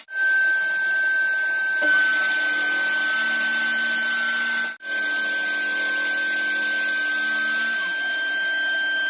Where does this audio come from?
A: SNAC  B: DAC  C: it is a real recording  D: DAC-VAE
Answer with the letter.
C